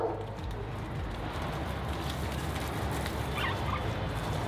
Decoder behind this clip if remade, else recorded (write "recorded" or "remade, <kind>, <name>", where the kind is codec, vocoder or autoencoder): recorded